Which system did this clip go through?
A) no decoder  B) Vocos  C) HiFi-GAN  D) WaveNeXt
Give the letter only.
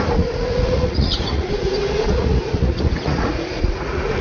B